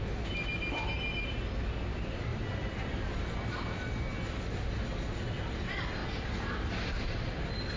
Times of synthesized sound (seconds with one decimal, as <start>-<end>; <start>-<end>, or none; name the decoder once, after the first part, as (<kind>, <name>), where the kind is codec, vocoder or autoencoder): none